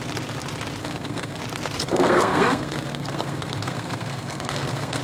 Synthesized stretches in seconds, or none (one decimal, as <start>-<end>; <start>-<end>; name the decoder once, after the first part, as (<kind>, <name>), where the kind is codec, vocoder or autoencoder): 0.8-1.4 (codec, SNAC); 1.8-5.0